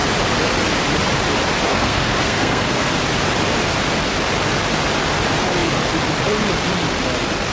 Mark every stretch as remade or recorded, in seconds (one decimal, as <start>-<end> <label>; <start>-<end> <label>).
0.0-1.7 recorded; 1.7-2.9 remade; 2.9-7.5 recorded